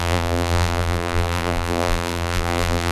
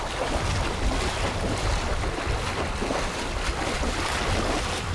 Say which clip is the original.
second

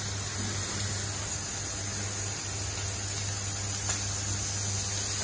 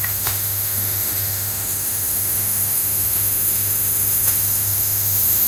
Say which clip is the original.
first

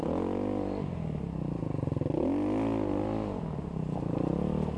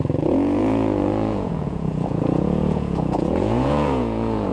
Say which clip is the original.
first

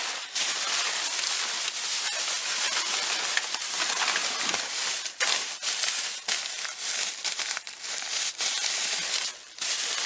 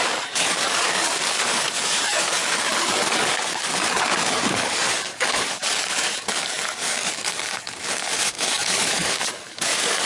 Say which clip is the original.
first